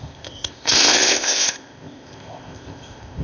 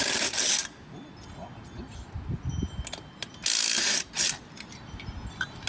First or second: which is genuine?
second